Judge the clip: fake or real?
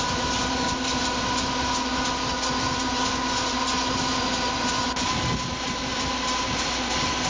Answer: real